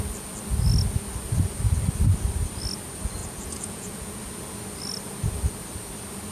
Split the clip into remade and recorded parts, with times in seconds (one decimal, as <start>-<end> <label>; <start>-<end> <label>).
0.0-3.2 recorded; 3.2-4.2 remade; 4.2-6.3 recorded